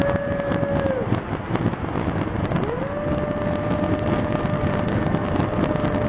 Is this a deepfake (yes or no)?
no